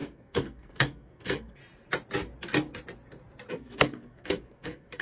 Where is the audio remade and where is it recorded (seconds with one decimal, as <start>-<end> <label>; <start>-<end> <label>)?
0.0-1.6 remade; 1.6-3.5 recorded; 3.5-5.0 remade